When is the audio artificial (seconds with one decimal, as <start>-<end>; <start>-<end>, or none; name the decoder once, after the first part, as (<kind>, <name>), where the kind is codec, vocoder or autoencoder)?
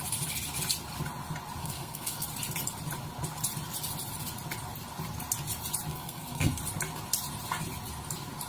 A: 1.6-2.3 (codec, SNAC); 5.9-6.6